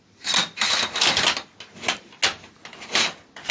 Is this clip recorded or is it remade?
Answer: recorded